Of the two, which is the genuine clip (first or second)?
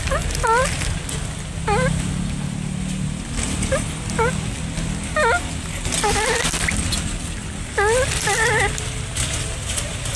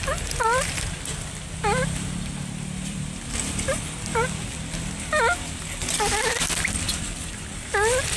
first